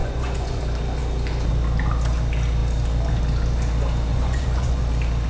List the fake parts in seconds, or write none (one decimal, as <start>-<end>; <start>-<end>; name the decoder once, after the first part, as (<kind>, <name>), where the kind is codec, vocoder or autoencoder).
0.0-0.6 (vocoder, Vocos); 4.1-4.8